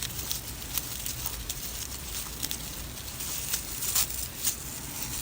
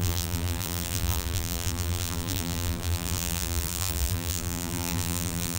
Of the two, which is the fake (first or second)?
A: second